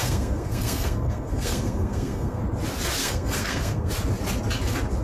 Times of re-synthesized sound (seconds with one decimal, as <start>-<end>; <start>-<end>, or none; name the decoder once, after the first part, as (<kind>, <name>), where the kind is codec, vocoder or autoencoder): 0.0-2.4 (codec, SNAC); 3.0-3.9